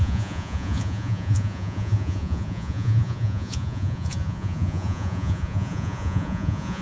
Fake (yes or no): yes